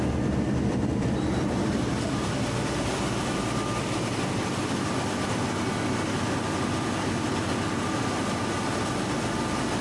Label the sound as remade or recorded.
recorded